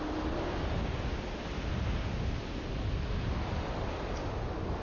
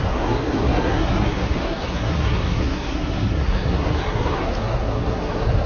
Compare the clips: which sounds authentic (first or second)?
first